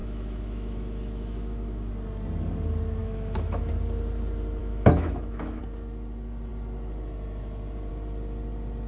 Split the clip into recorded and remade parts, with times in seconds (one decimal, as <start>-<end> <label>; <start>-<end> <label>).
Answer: 0.0-1.9 remade; 1.9-3.0 recorded; 3.0-3.7 remade; 3.7-4.6 recorded; 4.6-5.6 remade; 5.6-8.9 recorded